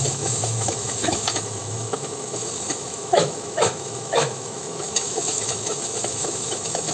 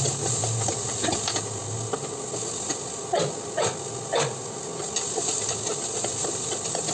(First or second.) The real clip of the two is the second